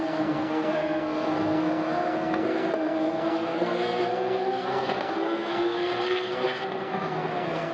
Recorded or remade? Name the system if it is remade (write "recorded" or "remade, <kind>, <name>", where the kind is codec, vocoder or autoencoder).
remade, codec, SNAC